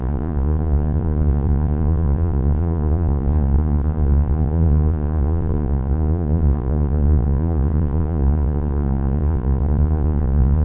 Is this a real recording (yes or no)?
no